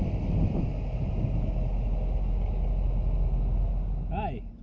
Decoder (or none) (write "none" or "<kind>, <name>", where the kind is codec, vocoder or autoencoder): none